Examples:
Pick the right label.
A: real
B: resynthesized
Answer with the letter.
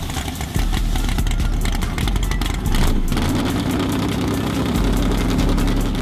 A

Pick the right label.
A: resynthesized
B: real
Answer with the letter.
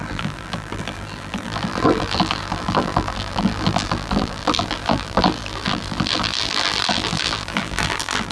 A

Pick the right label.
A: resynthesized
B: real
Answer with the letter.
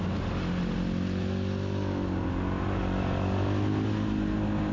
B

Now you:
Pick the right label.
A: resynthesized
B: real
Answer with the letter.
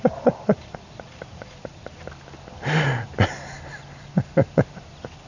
B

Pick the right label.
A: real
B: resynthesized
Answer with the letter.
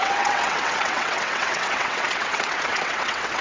B